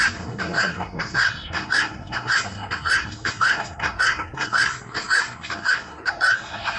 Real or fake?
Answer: fake